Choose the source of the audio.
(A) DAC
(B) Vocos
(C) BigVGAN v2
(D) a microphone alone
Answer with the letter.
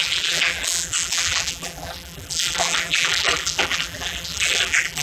C